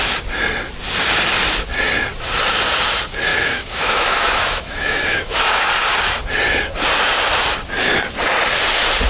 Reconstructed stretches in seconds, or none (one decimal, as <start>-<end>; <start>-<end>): 3.3-5.7